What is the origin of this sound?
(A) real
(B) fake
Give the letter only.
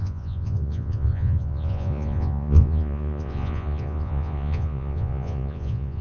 B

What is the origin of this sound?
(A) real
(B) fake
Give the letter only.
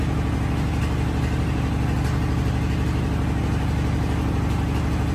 A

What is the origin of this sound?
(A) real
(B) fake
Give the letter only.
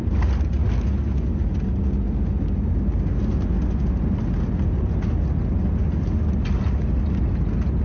A